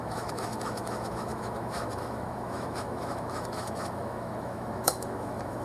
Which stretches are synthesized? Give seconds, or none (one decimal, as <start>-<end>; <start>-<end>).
0.0-5.6